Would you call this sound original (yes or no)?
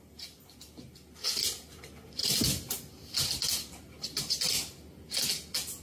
yes